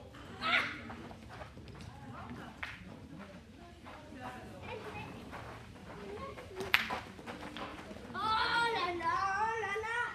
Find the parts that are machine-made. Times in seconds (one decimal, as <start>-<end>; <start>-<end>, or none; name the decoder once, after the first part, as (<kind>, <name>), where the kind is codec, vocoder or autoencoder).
2.1-5.3 (vocoder, BigVGAN v2); 5.8-7.0; 7.7-8.9